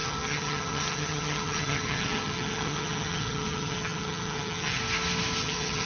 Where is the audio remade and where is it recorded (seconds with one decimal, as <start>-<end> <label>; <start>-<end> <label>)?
0.0-4.8 remade; 4.8-5.4 recorded; 5.4-5.9 remade

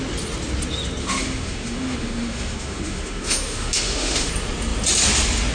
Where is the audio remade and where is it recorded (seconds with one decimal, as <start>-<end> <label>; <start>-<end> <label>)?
0.0-1.0 recorded; 1.0-4.3 remade; 4.3-5.5 recorded

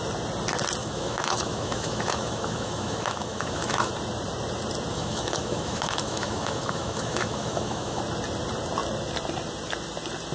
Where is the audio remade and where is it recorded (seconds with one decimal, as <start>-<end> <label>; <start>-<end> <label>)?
0.0-0.8 recorded; 0.8-3.9 remade; 3.9-4.9 recorded; 4.9-8.0 remade; 8.0-10.3 recorded

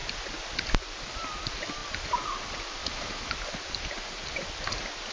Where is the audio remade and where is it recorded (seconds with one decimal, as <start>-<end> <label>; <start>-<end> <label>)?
0.0-2.8 recorded; 2.8-3.3 remade; 3.3-5.1 recorded